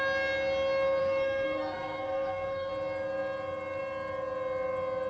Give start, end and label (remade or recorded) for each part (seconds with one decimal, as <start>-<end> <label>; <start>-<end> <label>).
0.0-1.0 recorded; 1.0-2.7 remade; 2.7-5.1 recorded